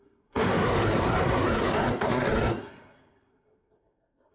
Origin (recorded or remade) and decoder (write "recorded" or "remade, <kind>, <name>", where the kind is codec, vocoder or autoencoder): remade, codec, SNAC